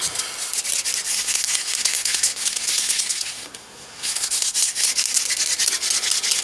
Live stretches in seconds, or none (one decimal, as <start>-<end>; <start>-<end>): 0.0-1.1; 4.9-6.4